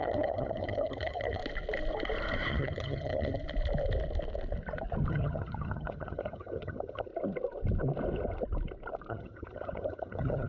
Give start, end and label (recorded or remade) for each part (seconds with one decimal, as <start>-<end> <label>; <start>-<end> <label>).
0.0-1.4 remade; 1.4-2.5 recorded; 2.5-3.4 remade; 3.4-5.1 recorded; 5.1-7.1 remade; 7.1-9.1 recorded; 9.1-10.5 remade